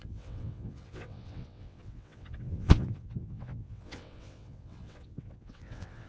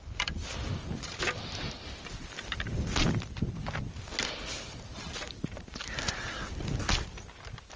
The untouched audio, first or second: second